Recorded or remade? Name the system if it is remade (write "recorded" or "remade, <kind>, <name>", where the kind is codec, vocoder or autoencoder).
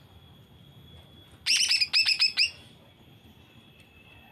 recorded